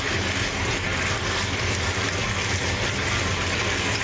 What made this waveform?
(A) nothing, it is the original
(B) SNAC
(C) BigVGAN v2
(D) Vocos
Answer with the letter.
A